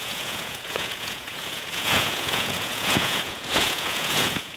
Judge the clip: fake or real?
fake